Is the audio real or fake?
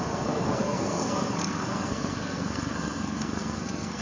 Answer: fake